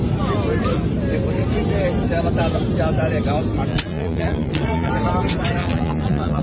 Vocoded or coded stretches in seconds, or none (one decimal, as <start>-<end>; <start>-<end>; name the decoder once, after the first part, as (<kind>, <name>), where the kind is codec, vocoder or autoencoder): 3.7-4.9 (vocoder, Vocos); 5.6-6.4